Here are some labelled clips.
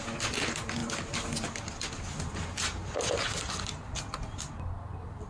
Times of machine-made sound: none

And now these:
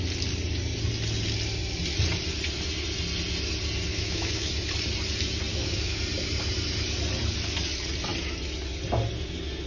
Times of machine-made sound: 3.9-4.5; 5.5-6.0

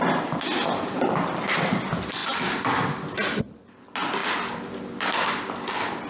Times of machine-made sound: none